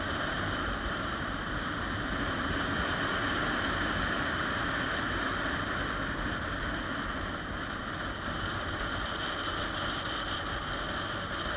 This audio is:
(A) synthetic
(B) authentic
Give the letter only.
B